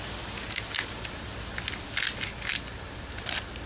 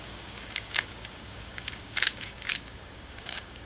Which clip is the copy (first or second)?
second